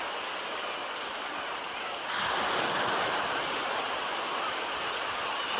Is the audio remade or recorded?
recorded